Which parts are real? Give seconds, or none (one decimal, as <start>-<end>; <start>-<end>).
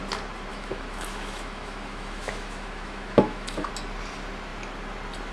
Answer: 0.0-0.5; 3.7-5.3